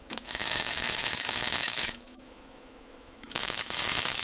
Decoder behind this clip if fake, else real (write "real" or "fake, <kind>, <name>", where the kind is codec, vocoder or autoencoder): fake, autoencoder, DAC-VAE